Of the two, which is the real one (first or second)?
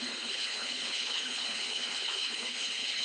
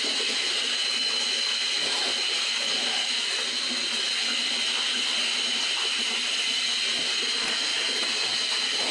second